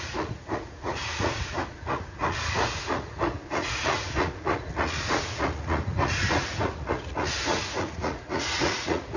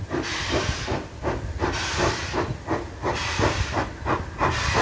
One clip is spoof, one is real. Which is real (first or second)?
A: second